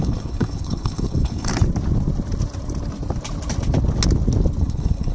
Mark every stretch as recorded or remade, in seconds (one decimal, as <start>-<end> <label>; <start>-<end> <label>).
0.0-1.5 remade; 1.5-4.6 recorded; 4.6-5.1 remade